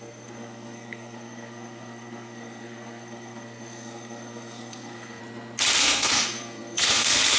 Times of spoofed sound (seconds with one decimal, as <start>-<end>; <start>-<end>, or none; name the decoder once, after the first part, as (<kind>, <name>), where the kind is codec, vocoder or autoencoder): 0.0-5.2 (codec, SNAC); 5.8-7.4